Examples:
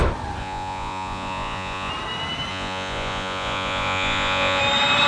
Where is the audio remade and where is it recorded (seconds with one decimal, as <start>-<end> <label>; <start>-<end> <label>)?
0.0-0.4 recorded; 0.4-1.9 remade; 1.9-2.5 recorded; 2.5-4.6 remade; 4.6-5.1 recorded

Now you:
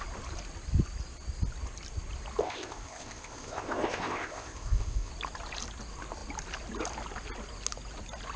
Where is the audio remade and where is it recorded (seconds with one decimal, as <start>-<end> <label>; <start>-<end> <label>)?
0.0-2.4 recorded; 2.4-5.1 remade; 5.1-8.4 recorded

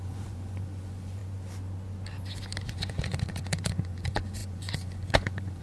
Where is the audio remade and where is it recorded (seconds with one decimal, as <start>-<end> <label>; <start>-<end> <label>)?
0.0-1.2 remade; 1.2-2.7 recorded; 2.7-5.6 remade